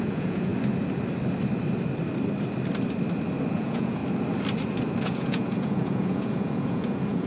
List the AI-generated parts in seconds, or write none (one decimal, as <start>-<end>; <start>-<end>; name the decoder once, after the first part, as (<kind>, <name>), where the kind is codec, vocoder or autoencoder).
0.0-0.5 (vocoder, Vocos); 3.5-4.0; 5.0-7.3